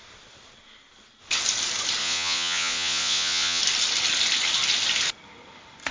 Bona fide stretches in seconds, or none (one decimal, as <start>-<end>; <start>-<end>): 0.0-2.0; 3.6-5.9